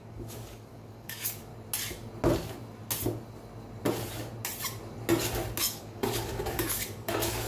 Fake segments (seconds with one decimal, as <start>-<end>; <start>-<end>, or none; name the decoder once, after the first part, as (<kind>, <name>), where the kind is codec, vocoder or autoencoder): 0.0-1.5 (codec, DAC); 5.6-7.5